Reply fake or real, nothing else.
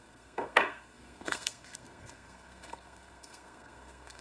fake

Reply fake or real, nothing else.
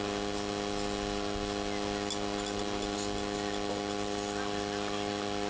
real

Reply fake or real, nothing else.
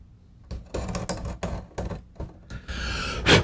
real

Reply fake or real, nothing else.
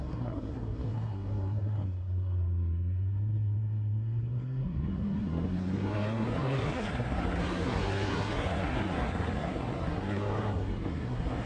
fake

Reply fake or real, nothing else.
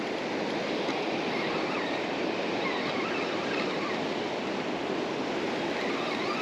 real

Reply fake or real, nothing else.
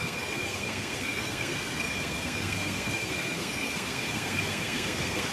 fake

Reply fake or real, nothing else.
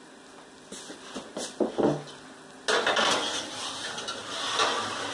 real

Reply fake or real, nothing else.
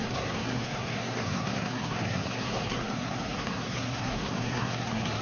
fake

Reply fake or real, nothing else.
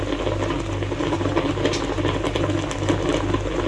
real